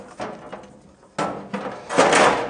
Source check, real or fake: real